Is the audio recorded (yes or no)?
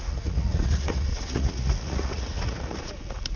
no